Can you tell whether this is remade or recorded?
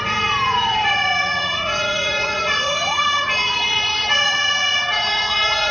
remade